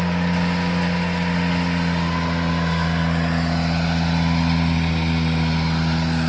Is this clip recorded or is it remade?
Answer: recorded